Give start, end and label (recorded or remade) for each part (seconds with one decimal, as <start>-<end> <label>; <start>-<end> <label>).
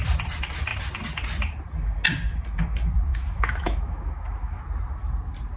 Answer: 0.0-3.1 recorded; 3.1-4.6 remade; 4.6-5.6 recorded